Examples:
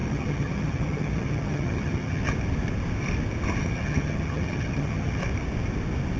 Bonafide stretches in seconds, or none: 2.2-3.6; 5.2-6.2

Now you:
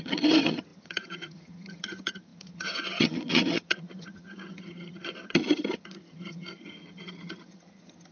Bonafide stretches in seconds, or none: none

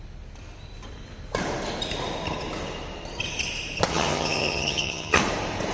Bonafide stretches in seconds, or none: 0.0-3.9; 5.2-5.7

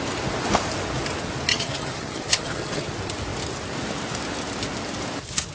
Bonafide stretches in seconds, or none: 0.0-1.5; 2.9-5.5

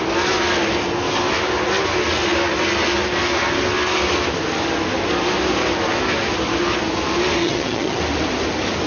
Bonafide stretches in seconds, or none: 0.0-7.4; 8.0-8.9

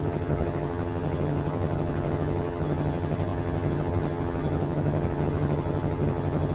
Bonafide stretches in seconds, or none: none

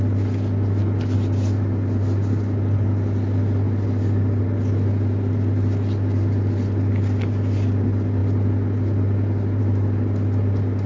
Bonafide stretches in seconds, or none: 0.0-10.9